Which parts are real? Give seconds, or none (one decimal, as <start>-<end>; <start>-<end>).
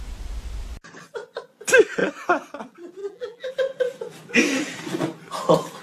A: 0.0-3.0; 3.5-5.8